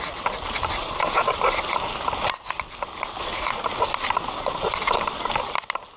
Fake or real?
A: real